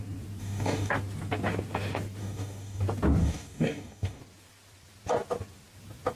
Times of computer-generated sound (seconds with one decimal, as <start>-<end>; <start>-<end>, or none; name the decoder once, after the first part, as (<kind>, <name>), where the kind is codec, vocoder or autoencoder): 0.4-0.9 (codec, DAC); 2.2-2.8; 3.2-4.2